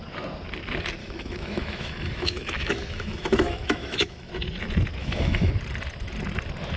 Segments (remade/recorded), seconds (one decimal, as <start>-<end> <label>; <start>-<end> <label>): 0.0-1.0 recorded; 1.0-4.3 remade; 4.3-5.0 recorded; 5.0-5.5 remade; 5.5-6.8 recorded